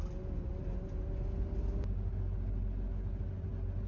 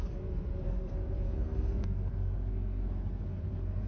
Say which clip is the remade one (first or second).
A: second